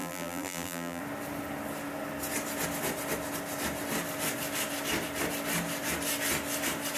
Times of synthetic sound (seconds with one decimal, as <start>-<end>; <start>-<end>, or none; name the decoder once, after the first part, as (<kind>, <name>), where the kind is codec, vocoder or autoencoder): 0.0-1.0 (vocoder, BigVGAN v2)